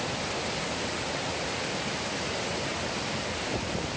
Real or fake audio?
real